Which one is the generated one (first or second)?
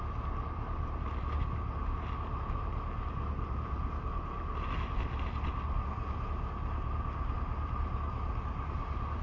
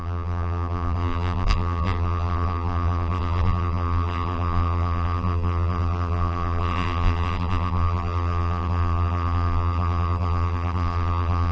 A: second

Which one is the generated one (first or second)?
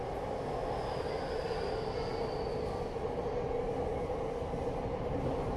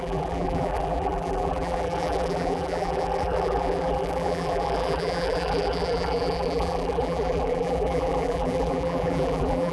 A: second